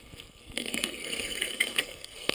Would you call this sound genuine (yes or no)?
no